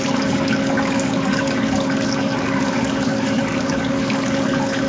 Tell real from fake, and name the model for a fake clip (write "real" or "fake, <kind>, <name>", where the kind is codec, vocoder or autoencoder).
fake, codec, DAC